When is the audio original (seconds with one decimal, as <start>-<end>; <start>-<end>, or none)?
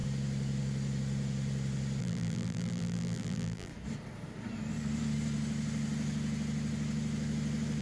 0.0-2.0; 3.7-7.8